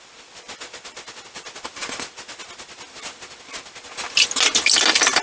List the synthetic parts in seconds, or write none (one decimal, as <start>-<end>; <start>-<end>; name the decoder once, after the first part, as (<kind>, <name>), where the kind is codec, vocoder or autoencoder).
none